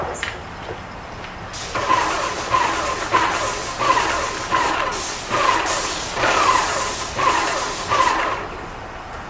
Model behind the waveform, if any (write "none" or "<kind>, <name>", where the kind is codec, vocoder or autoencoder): none